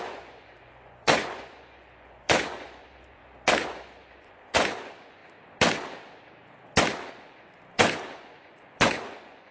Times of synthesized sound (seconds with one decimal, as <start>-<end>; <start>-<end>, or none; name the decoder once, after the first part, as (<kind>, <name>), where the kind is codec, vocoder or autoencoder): 0.0-3.2 (vocoder, Vocos); 3.7-5.2; 7.1-9.5

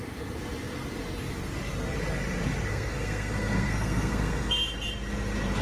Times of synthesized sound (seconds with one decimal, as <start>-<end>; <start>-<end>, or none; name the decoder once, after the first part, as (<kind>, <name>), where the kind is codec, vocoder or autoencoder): 2.7-4.5 (codec, SNAC)